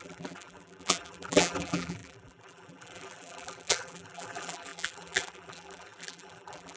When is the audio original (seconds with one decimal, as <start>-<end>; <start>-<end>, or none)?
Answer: none